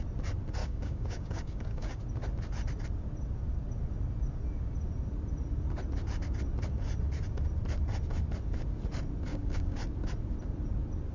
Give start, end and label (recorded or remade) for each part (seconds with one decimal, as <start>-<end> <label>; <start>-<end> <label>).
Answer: 0.0-0.6 recorded; 0.6-2.0 remade; 2.0-9.3 recorded; 9.3-9.8 remade; 9.8-11.1 recorded